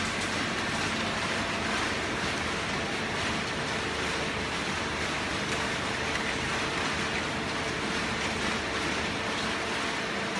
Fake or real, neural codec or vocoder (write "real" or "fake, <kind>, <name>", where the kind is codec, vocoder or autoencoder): real